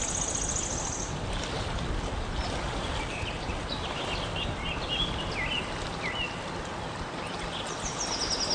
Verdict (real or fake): real